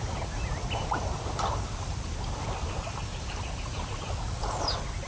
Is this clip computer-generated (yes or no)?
no